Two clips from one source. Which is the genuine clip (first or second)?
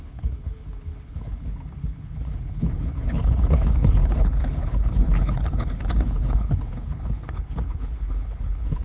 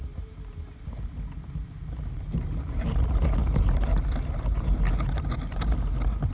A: second